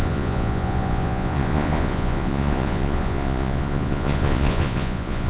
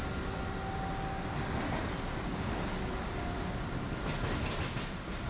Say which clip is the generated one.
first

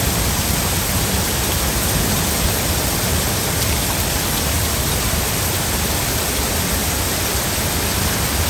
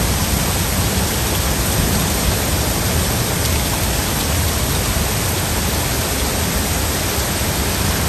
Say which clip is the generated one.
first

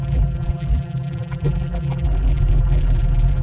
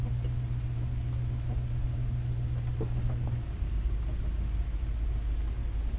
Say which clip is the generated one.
first